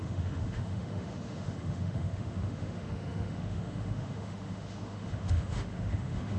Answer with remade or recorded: remade